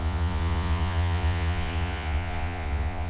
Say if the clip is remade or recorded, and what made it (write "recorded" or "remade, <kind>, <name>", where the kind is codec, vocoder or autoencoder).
remade, vocoder, Vocos